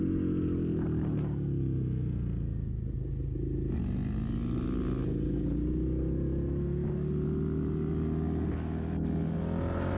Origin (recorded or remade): recorded